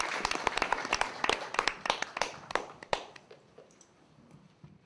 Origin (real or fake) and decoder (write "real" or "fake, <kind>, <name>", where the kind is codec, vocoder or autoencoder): fake, vocoder, BigVGAN v2